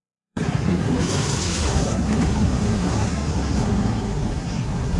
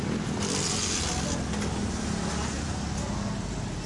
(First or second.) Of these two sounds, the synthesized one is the first